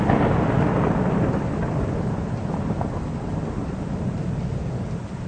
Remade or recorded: recorded